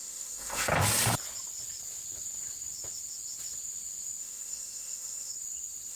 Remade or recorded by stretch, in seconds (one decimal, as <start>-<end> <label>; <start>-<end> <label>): 0.0-0.7 remade; 0.7-4.2 recorded; 4.2-5.3 remade; 5.3-5.9 recorded